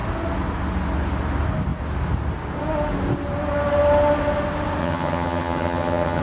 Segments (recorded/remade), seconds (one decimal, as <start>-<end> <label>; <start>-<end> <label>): 0.0-4.8 recorded; 4.8-6.2 remade